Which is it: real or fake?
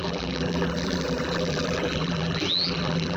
fake